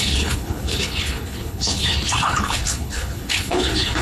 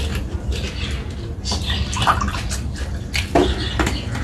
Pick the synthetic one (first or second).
first